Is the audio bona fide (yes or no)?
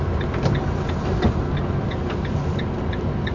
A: yes